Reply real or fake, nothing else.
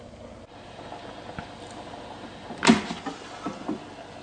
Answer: real